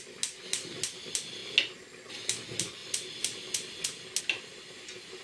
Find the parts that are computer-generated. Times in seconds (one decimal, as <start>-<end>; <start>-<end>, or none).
none